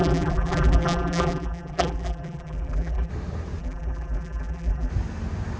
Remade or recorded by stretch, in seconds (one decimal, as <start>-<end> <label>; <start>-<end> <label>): 0.0-3.1 remade; 3.1-3.6 recorded; 3.6-4.9 remade; 4.9-5.6 recorded